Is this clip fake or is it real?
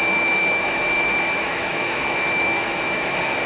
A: fake